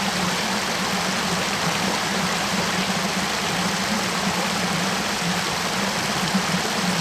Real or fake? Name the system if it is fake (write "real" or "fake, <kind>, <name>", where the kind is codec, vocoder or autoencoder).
real